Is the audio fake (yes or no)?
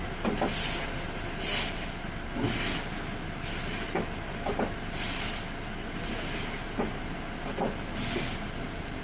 no